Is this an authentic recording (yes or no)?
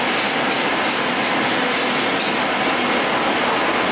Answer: yes